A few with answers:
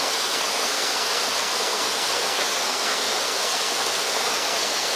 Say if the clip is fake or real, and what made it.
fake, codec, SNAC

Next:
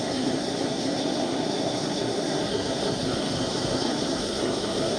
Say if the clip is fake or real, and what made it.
fake, codec, SNAC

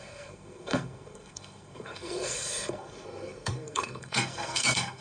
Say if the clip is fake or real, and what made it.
fake, codec, SNAC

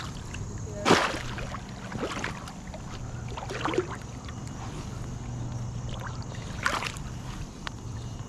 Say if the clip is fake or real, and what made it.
real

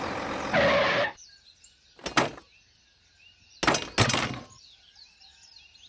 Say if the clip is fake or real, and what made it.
real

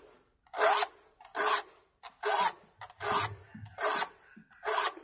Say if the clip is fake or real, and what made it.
real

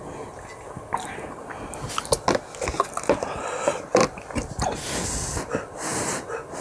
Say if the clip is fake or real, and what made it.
real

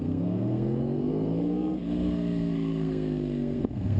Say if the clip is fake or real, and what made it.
fake, codec, SNAC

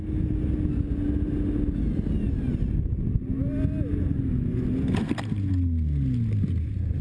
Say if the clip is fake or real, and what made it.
real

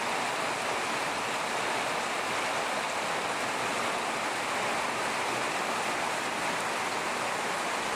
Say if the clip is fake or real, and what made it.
real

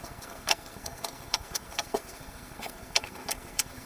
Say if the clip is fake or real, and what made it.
fake, codec, SNAC